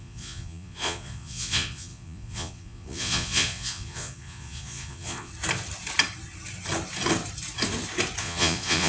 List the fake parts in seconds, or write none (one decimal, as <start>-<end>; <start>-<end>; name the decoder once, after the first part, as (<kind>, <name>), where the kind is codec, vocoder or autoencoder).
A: 0.0-5.3 (vocoder, Vocos); 8.2-8.9